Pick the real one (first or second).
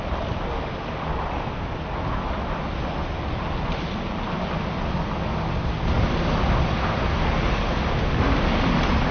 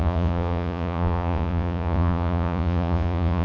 first